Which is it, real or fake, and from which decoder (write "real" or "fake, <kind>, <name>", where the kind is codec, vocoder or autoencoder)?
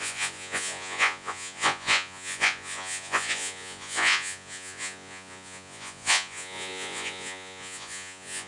fake, vocoder, Vocos